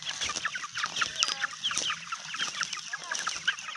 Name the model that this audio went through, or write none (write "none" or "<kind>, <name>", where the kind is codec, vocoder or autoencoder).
none